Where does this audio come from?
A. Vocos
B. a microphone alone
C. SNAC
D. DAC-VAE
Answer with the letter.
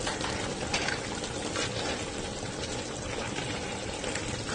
B